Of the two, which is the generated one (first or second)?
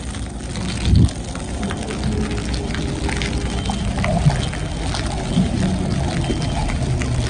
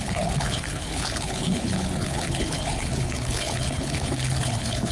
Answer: second